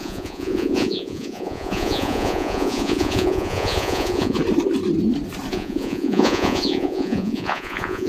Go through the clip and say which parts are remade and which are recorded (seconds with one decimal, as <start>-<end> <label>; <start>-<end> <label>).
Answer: 0.0-4.4 remade; 4.4-5.5 recorded; 5.5-8.1 remade